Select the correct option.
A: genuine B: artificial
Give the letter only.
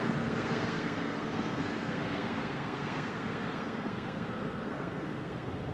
B